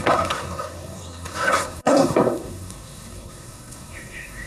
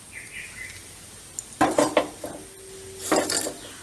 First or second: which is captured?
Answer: second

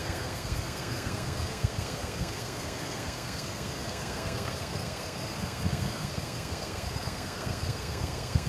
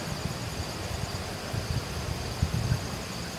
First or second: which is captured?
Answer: second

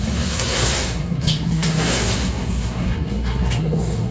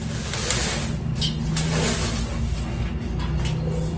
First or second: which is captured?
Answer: second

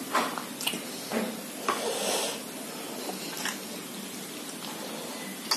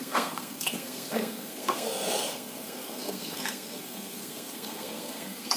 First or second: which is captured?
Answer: first